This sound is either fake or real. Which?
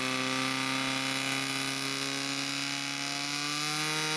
real